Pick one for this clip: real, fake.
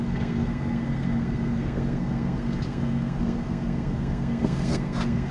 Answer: fake